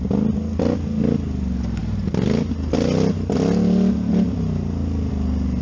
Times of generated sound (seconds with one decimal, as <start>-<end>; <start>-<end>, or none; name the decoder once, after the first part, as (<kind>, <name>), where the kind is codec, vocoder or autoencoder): none